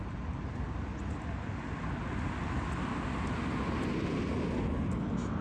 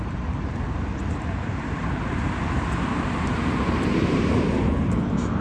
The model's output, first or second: second